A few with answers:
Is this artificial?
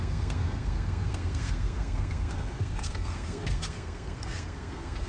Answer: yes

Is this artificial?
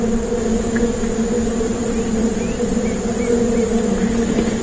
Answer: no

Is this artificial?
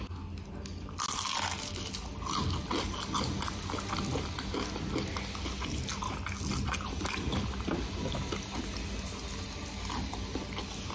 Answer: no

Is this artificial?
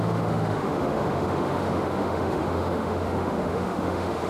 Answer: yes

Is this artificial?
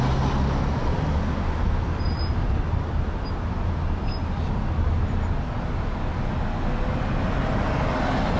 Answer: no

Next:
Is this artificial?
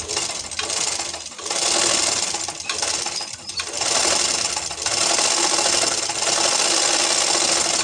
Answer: no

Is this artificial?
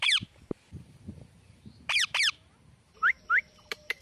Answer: yes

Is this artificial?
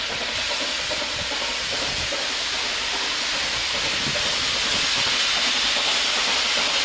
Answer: no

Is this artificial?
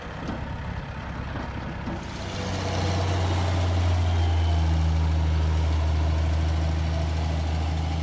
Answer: no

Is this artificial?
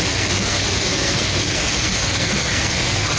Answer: yes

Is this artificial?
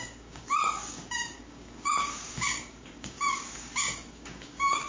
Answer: yes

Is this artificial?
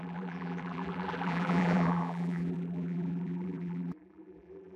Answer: yes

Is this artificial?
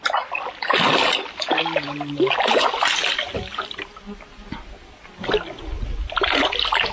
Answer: no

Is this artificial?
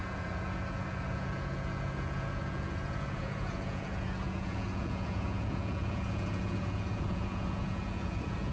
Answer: yes